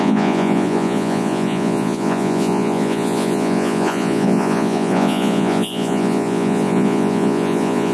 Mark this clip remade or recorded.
remade